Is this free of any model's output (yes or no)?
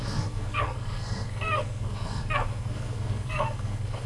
no